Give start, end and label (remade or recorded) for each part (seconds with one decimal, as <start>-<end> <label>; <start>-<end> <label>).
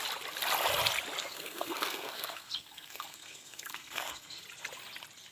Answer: 0.0-1.2 recorded; 1.2-4.4 remade; 4.4-5.3 recorded